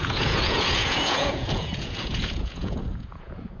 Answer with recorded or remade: remade